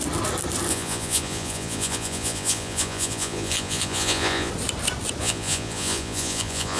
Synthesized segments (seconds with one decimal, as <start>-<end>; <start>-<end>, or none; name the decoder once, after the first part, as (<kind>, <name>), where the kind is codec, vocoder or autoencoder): 0.7-4.5 (vocoder, Vocos); 5.2-6.8